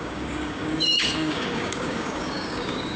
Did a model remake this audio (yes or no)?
yes